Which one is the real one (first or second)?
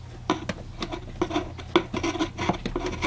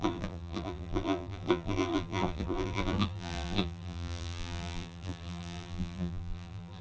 first